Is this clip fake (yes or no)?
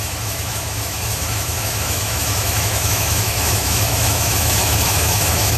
yes